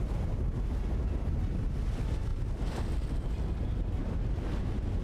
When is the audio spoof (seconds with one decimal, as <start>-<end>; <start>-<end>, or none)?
none